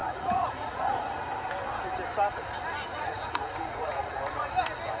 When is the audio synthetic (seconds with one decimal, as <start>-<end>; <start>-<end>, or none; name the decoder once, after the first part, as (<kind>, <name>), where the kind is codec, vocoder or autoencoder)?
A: 0.0-1.2 (vocoder, Vocos); 2.9-4.5